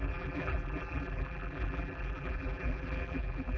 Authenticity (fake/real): fake